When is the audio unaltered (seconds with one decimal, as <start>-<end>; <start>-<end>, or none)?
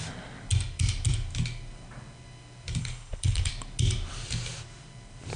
0.0-2.8; 3.5-5.4